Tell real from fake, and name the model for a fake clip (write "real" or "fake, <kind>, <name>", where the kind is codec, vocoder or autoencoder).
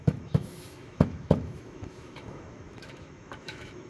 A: fake, autoencoder, DAC-VAE